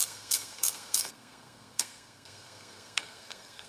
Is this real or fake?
fake